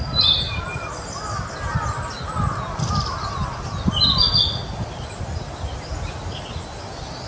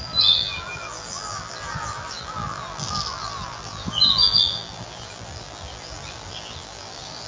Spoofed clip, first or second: second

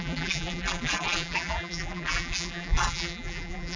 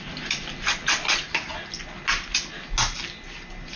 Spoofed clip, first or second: first